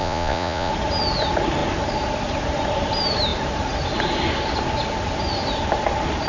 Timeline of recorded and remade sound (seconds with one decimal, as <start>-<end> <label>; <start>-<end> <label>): 0.0-0.7 remade; 0.7-6.3 recorded